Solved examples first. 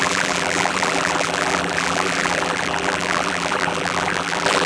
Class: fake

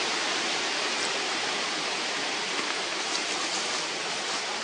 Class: fake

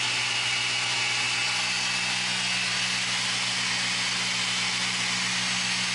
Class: real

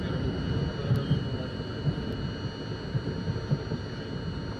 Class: real